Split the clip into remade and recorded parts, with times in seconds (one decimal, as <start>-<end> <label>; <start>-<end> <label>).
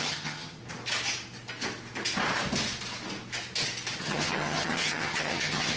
0.0-0.6 remade; 0.6-4.0 recorded; 4.0-5.8 remade